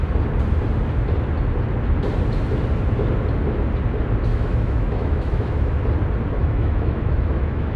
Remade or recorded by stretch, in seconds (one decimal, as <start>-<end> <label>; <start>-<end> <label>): 0.0-4.3 recorded; 4.3-5.8 remade; 5.8-6.4 recorded; 6.4-7.8 remade